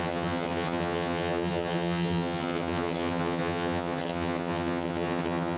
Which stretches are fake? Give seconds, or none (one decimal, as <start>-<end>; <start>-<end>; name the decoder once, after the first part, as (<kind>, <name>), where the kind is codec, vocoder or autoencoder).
0.0-5.6 (vocoder, HiFi-GAN)